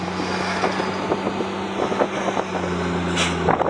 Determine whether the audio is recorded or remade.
recorded